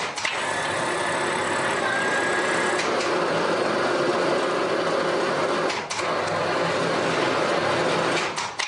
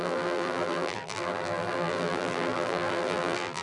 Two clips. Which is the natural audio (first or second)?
first